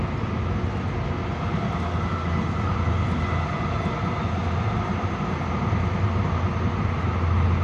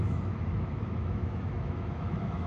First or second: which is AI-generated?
second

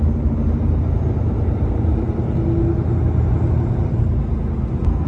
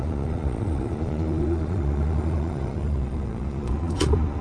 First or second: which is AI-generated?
second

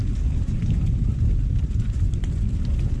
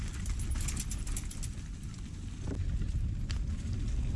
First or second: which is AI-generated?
first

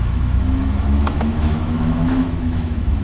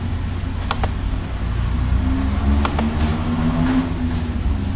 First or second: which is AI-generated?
first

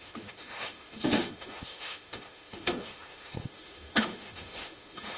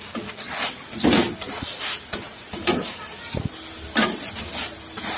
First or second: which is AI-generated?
first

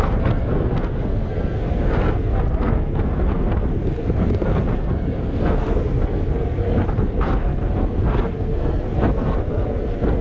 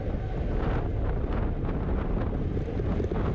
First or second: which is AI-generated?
first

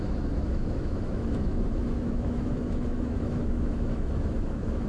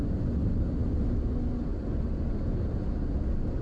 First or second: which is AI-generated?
first